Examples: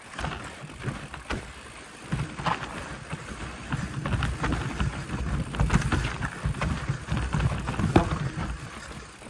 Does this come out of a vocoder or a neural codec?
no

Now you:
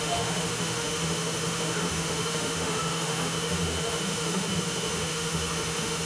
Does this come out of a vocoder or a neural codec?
yes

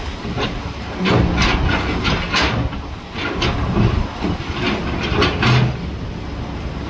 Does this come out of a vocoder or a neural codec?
no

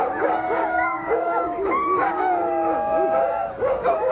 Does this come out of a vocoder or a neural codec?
yes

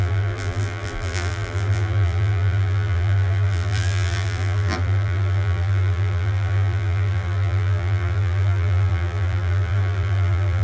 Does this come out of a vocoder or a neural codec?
yes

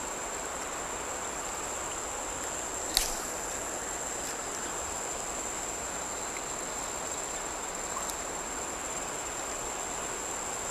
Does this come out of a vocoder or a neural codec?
no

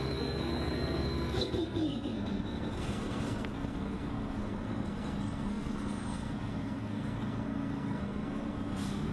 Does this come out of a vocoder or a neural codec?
yes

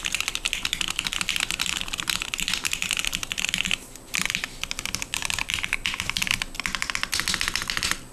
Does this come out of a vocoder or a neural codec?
no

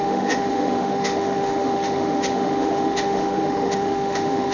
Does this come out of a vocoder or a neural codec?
yes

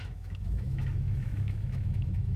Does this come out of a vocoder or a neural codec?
yes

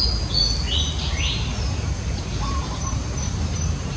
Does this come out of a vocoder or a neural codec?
no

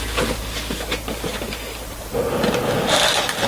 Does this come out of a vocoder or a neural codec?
no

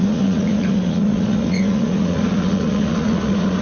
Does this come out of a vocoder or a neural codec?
yes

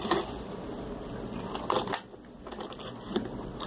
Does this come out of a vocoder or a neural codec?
no